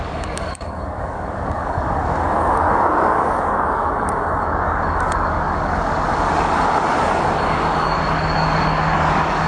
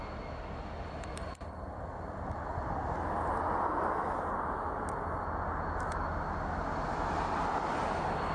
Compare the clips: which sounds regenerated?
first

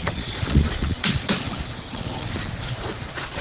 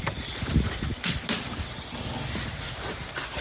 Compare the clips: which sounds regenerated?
first